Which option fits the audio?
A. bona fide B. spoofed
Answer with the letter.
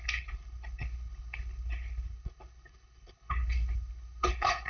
B